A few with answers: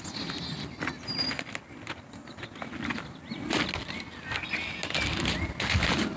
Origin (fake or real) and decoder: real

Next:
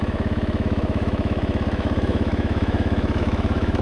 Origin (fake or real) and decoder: fake, autoencoder, DAC-VAE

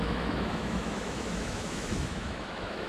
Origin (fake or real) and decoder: fake, autoencoder, DAC-VAE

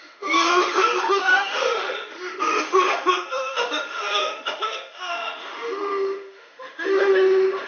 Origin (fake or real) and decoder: fake, autoencoder, DAC-VAE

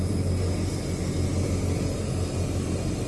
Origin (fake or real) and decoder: real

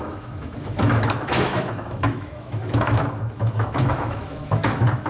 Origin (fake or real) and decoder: fake, autoencoder, DAC-VAE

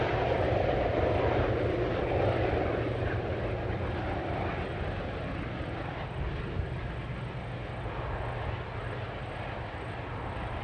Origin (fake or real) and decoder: real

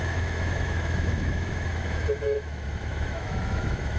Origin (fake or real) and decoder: fake, autoencoder, DAC-VAE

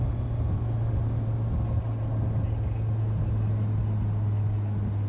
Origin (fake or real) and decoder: real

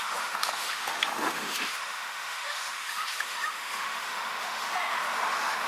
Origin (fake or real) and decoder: fake, autoencoder, DAC-VAE